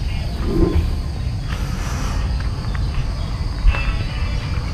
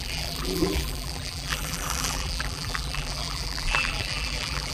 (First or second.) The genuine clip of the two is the first